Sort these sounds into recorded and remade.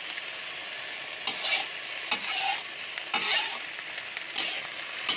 recorded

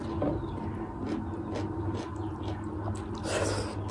recorded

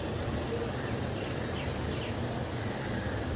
recorded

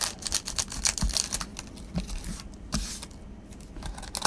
recorded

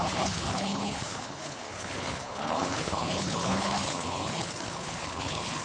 remade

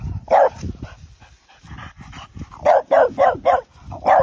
recorded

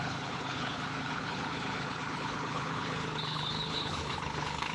remade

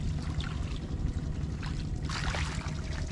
recorded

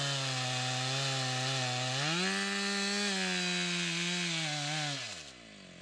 recorded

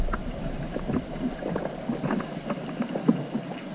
recorded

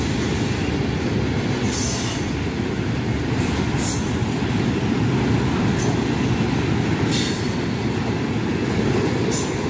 recorded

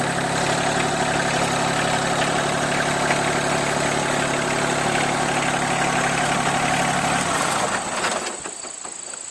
recorded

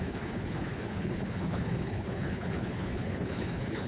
remade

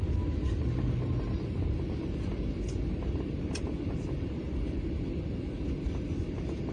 recorded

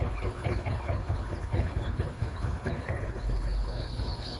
remade